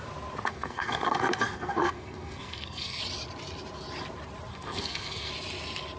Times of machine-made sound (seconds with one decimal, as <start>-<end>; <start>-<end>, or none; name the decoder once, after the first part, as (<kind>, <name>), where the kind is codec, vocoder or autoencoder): 0.5-3.0 (codec, SNAC); 4.5-5.3